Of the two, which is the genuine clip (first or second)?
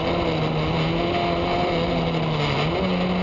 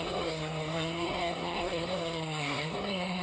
first